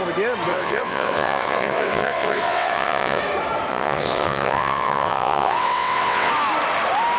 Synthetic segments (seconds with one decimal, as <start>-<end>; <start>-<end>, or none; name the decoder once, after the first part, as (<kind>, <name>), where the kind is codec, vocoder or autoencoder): 0.5-3.2 (vocoder, WaveNeXt); 3.7-6.3